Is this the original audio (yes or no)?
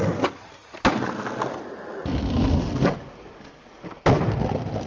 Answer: yes